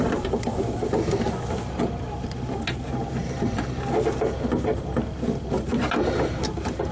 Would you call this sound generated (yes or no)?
no